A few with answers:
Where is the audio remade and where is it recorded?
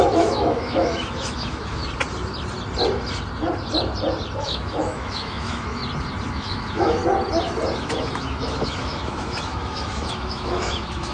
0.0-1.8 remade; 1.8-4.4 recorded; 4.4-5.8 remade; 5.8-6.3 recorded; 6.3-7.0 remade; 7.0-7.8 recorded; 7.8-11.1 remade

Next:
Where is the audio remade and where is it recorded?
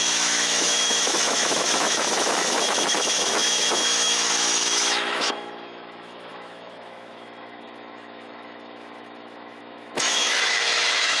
0.0-11.2 remade